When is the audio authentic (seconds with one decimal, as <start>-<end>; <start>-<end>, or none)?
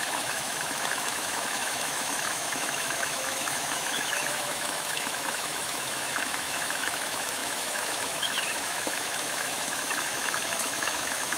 none